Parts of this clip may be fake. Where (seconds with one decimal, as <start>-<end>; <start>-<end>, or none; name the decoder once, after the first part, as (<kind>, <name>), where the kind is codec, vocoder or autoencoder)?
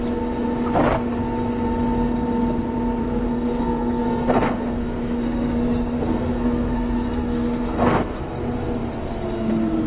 3.0-8.2 (codec, SNAC)